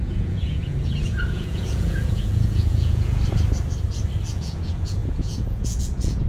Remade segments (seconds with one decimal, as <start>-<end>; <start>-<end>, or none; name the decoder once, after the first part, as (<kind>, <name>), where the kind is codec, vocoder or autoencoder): 0.0-3.2 (vocoder, Vocos); 4.3-6.3